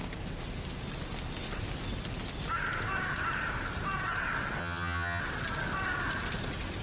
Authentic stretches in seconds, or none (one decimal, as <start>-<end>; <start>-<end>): 0.0-4.6; 5.2-6.8